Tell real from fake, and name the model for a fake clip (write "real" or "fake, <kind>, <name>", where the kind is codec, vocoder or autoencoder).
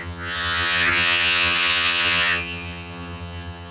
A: fake, vocoder, HiFi-GAN